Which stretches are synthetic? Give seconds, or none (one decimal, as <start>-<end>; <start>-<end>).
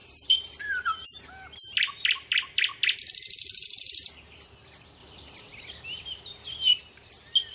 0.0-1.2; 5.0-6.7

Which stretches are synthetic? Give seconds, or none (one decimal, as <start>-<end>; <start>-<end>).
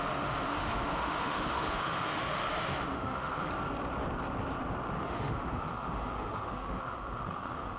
0.0-3.5; 5.0-7.8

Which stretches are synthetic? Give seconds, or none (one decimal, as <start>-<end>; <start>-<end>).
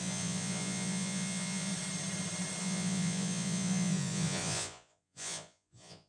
0.0-1.7; 2.6-6.1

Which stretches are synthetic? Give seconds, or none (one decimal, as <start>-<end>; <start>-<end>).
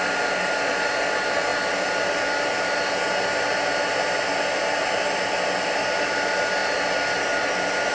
none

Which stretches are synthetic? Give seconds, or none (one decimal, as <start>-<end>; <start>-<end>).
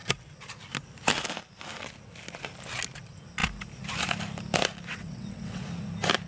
4.9-5.6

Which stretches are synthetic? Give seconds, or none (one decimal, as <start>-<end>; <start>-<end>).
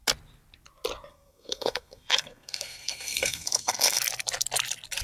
1.1-4.0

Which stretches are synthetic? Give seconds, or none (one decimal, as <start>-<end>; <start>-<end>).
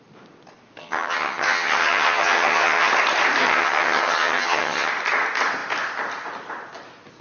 0.8-2.9; 3.4-4.9